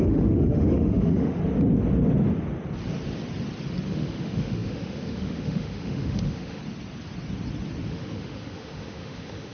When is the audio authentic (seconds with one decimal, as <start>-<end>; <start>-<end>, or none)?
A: 1.4-3.9; 6.6-7.9